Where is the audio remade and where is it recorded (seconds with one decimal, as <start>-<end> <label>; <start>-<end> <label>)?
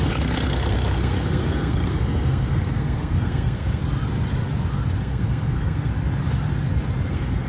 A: 0.0-3.8 remade; 3.8-5.0 recorded; 5.0-5.9 remade; 5.9-7.1 recorded; 7.1-7.5 remade